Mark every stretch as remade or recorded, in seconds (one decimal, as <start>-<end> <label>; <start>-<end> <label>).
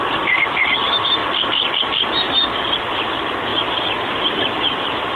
0.0-5.2 recorded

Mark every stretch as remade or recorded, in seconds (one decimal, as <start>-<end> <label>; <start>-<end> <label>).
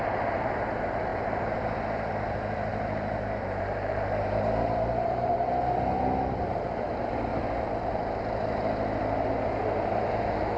0.0-2.7 recorded; 2.7-5.3 remade; 5.3-10.6 recorded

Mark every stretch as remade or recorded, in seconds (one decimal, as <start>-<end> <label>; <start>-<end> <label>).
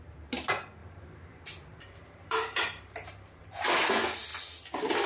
0.0-0.8 recorded; 0.8-3.9 remade; 3.9-5.1 recorded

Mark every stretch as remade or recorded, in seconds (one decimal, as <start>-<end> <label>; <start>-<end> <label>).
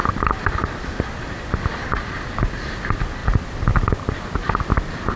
0.0-1.0 remade; 1.0-3.2 recorded; 3.2-4.1 remade; 4.1-5.2 recorded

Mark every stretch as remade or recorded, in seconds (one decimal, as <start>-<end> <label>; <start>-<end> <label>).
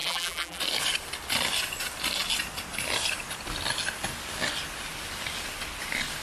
0.0-0.6 remade; 0.6-6.2 recorded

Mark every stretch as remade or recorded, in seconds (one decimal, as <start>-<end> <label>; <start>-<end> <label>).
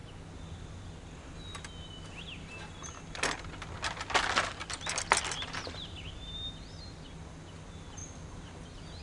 0.0-8.0 recorded; 8.0-9.0 remade